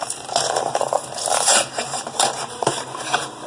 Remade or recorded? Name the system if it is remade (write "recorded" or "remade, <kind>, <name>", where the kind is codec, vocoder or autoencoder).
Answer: remade, vocoder, BigVGAN v2